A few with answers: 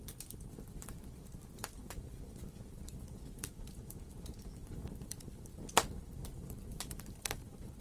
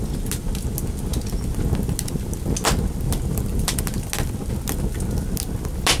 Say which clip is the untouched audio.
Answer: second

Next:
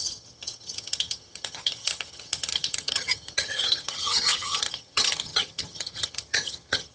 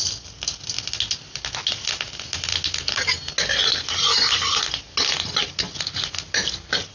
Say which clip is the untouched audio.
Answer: second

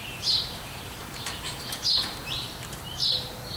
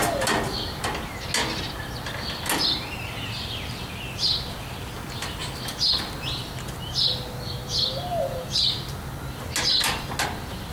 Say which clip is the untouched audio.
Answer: second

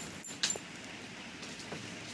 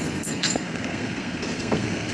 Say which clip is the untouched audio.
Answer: first